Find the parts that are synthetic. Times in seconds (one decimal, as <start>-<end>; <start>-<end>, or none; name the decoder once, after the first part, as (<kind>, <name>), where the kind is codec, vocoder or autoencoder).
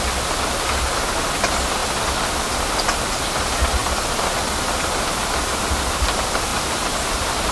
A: 6.5-7.5 (vocoder, BigVGAN v2)